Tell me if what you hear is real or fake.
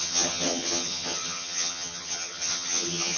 fake